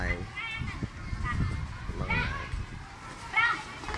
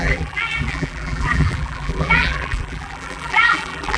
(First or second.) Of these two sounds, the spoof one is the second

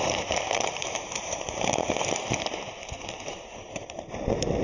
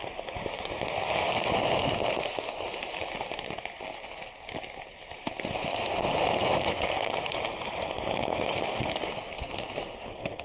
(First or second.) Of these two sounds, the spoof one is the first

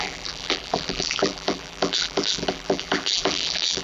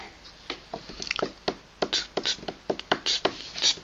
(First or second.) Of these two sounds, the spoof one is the first